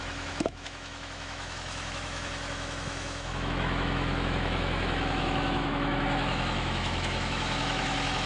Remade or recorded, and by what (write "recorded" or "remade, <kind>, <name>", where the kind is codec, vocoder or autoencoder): remade, autoencoder, DAC-VAE